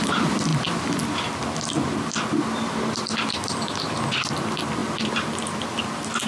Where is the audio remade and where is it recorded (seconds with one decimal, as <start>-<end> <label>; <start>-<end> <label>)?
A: 0.0-6.3 recorded